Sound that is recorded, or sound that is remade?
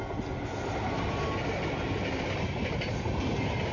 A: recorded